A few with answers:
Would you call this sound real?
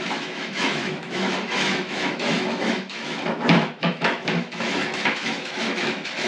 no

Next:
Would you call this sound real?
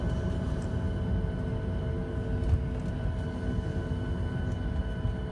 yes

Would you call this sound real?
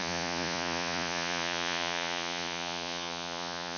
no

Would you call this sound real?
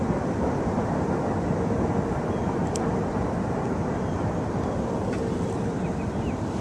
no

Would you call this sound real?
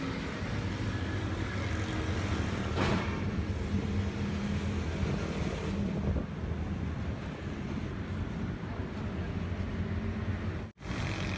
yes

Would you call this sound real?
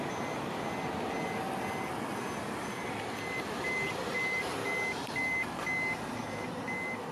yes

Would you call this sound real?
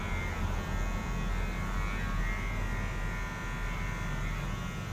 yes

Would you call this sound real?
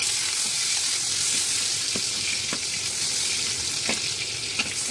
yes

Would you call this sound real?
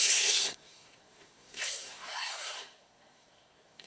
no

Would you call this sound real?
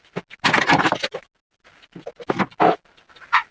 yes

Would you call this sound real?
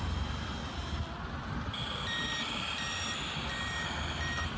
no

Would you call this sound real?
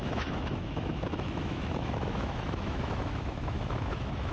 no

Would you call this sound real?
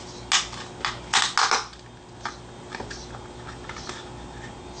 yes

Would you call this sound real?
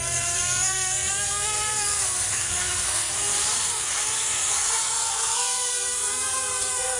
no